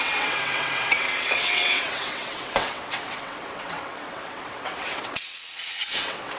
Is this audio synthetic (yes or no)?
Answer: yes